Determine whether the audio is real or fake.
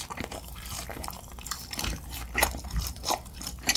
fake